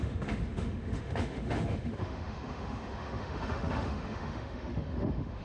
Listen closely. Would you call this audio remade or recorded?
remade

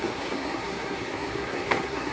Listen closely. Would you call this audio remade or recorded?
remade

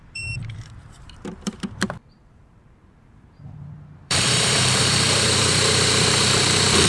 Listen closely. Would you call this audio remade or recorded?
remade